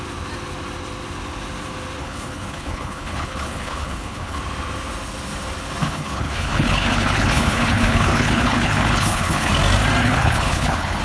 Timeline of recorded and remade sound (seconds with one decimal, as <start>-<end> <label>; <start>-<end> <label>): 0.0-2.0 recorded; 2.0-4.4 remade; 4.4-5.8 recorded; 5.8-9.5 remade; 9.5-10.0 recorded; 10.0-11.0 remade